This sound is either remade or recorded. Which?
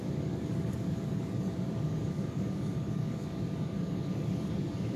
remade